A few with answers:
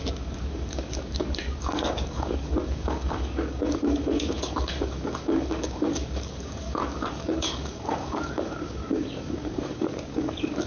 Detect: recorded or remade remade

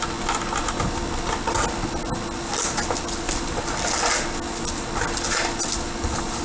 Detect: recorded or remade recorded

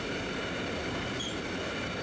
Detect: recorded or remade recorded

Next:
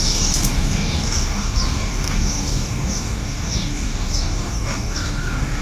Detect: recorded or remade remade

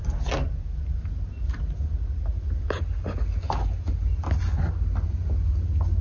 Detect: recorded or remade recorded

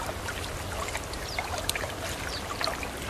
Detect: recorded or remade recorded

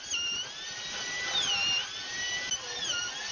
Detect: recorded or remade recorded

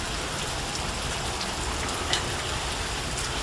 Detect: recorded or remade recorded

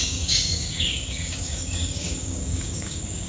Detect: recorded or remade remade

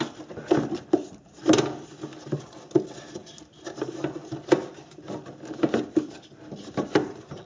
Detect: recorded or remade recorded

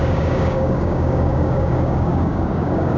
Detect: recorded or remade remade